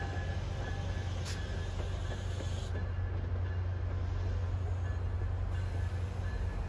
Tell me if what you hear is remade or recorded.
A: recorded